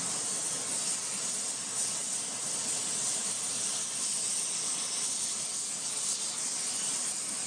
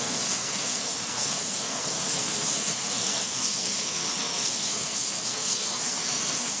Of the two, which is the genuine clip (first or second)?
first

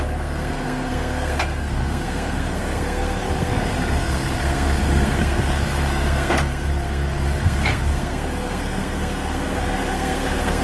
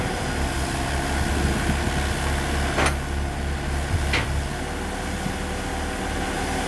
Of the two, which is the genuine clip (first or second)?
second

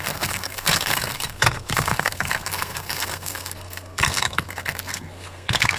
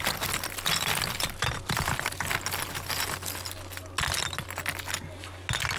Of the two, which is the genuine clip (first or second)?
second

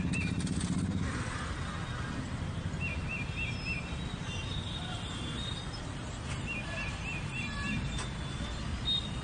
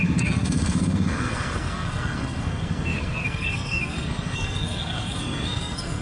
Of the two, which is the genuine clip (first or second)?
first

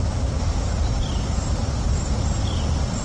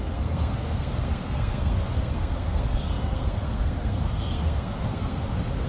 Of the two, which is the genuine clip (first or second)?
first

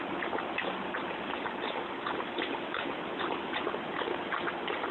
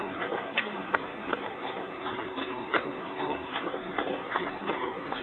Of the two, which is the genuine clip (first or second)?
first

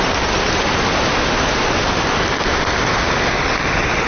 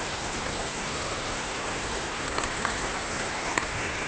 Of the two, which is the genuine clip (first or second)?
first